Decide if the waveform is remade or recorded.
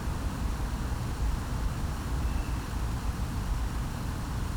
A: recorded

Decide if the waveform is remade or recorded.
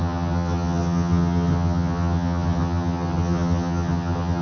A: remade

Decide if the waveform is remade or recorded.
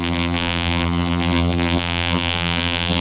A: remade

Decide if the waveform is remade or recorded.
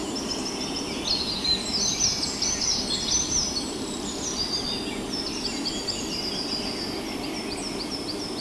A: recorded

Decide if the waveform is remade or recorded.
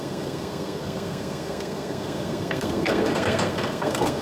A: remade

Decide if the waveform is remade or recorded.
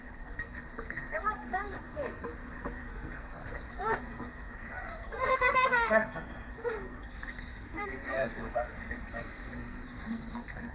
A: remade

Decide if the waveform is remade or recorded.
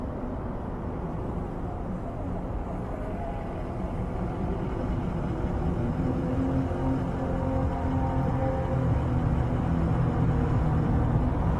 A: recorded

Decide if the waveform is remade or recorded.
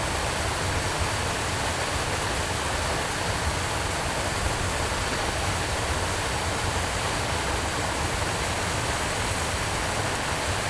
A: recorded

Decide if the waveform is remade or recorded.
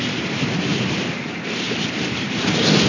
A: recorded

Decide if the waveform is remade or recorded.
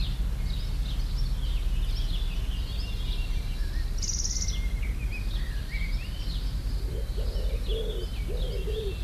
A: recorded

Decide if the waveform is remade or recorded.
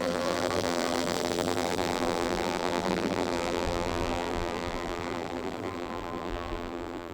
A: remade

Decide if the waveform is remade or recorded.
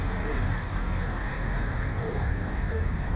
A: remade